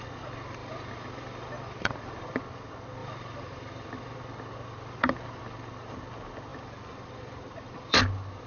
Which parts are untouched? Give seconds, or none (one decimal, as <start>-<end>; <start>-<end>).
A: 0.0-0.6; 2.4-3.0; 4.2-6.5; 8.0-8.5